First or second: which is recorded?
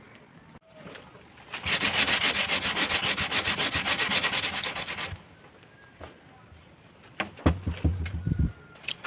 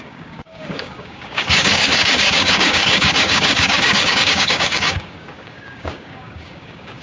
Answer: first